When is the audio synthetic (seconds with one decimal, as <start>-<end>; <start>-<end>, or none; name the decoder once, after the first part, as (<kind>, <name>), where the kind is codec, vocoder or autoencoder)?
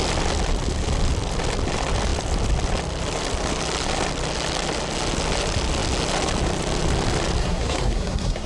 7.4-8.5 (codec, SNAC)